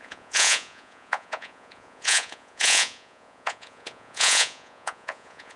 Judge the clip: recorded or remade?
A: remade